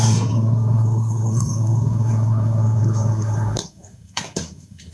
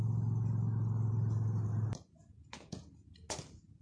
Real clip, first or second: second